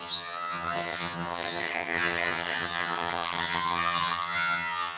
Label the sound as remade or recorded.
remade